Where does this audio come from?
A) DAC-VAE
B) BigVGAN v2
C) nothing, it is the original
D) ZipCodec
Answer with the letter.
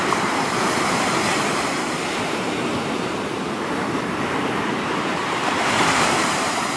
B